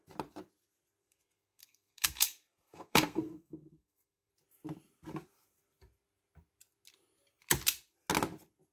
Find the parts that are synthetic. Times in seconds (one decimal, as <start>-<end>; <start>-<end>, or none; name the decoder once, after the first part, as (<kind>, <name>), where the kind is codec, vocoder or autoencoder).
1.0-4.3 (codec, SNAC)